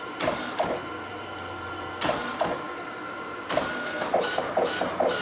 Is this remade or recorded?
remade